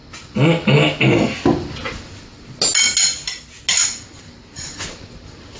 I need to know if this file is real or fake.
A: real